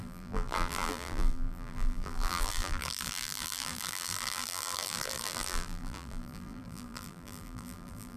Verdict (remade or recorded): remade